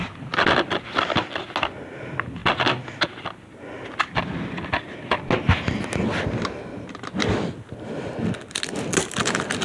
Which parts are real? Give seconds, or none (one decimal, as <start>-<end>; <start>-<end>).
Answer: 0.0-9.6